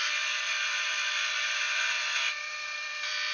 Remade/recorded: remade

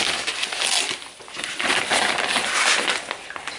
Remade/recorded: recorded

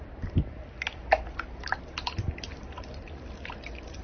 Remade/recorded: recorded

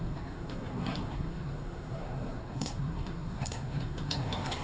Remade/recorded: remade